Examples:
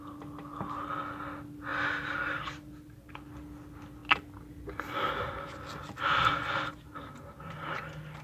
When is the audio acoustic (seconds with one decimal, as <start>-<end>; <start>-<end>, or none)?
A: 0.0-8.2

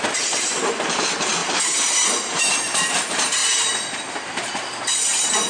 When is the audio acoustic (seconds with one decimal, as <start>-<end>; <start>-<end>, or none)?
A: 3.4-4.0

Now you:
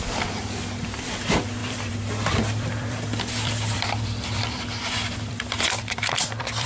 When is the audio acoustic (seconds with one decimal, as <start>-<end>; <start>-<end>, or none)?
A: none

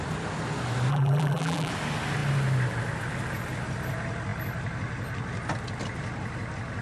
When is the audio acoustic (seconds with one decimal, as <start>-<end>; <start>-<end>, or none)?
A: 0.0-0.9; 1.7-6.8